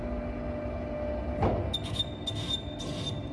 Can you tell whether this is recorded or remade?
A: recorded